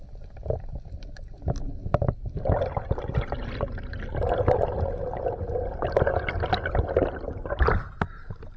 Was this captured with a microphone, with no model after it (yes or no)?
yes